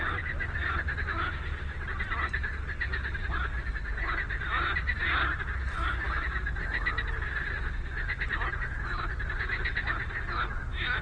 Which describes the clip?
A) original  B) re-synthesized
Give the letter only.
A